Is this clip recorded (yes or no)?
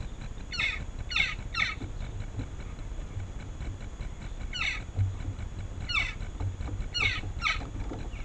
yes